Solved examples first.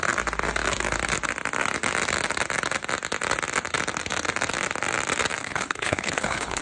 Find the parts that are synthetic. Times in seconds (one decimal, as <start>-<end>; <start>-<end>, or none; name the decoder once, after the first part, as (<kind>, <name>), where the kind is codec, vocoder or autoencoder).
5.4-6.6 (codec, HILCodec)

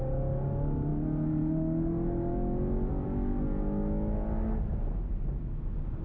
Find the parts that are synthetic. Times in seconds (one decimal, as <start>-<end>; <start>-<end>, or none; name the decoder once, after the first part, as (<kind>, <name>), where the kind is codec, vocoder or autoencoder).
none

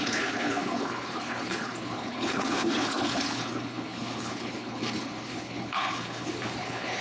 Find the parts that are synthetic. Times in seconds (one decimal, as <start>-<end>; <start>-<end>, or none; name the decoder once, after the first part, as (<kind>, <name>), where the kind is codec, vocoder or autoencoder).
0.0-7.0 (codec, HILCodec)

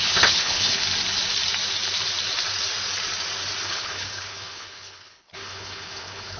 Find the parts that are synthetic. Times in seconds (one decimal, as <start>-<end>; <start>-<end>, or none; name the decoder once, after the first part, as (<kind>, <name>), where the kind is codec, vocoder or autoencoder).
0.0-0.8 (codec, HILCodec); 3.6-6.4

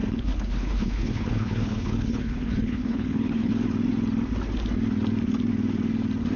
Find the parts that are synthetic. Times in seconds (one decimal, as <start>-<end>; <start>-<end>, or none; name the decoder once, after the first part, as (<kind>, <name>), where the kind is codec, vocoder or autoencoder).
0.0-3.5 (codec, HILCodec)

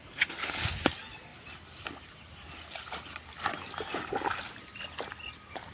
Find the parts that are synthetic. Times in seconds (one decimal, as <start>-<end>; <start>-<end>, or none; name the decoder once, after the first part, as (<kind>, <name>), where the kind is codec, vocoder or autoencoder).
0.0-0.6 (codec, HILCodec)

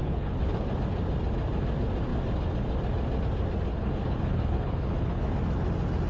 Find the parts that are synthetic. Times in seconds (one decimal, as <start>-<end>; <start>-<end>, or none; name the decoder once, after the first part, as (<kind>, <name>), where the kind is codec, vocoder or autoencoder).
0.0-0.7 (codec, HILCodec); 3.7-5.2